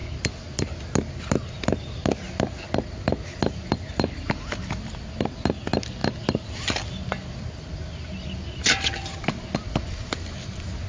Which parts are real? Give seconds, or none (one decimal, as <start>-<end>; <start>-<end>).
0.0-10.9